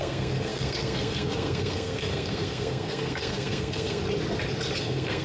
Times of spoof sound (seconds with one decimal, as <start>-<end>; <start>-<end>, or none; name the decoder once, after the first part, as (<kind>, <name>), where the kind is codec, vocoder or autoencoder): 0.0-4.0 (codec, SNAC); 4.8-5.2